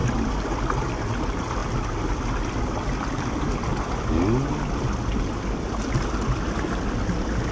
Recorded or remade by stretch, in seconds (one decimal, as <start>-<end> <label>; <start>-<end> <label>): 0.0-7.5 recorded

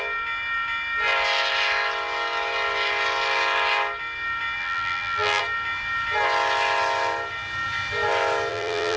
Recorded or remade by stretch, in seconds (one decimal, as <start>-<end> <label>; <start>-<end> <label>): 0.0-4.6 recorded; 4.6-5.4 remade; 5.4-8.5 recorded; 8.5-9.0 remade